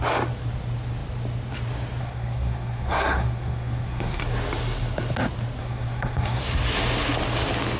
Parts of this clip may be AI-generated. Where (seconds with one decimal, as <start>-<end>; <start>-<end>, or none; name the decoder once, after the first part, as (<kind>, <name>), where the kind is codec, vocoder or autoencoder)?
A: 2.0-4.2 (codec, SNAC); 5.6-6.4